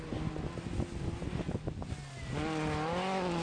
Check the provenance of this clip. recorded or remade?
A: recorded